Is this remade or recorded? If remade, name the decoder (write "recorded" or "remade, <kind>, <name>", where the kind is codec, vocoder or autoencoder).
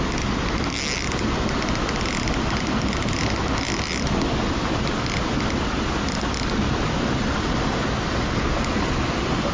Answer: recorded